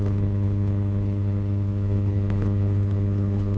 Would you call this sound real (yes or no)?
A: no